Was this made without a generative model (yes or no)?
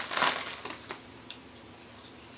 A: yes